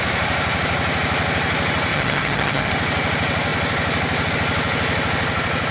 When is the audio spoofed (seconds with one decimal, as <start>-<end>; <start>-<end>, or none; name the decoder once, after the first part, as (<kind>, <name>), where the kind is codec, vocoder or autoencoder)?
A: 1.9-2.7 (vocoder, HiFi-GAN)